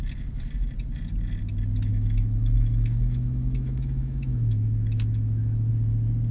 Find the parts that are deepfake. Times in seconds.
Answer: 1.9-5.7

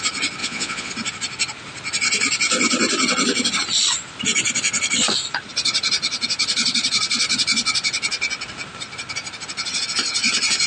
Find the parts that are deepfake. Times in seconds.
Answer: 0.4-0.9

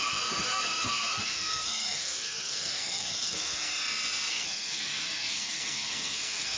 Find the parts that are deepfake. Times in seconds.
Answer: 0.0-3.7; 4.3-6.6

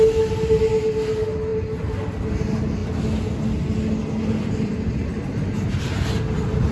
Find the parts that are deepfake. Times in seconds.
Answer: 5.1-6.2